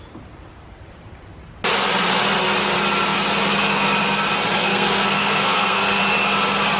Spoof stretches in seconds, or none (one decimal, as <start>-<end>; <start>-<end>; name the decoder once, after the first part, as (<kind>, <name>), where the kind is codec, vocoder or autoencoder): 4.6-6.0 (codec, SNAC)